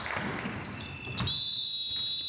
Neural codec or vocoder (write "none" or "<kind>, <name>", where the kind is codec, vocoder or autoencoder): none